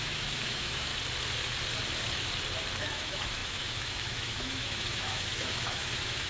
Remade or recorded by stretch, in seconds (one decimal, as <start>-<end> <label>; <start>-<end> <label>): 0.0-0.9 remade; 0.9-2.8 recorded; 2.8-6.3 remade